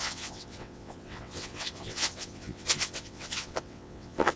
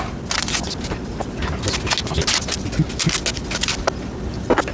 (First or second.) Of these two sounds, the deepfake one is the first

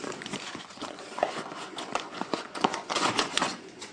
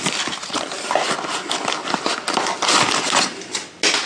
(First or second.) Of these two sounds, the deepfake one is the first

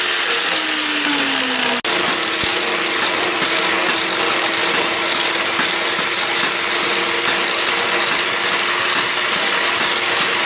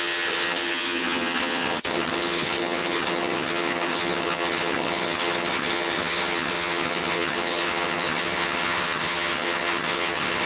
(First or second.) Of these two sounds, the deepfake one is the second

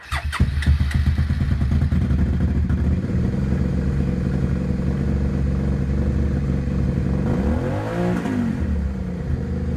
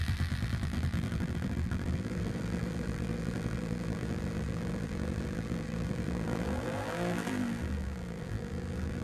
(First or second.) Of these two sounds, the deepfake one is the second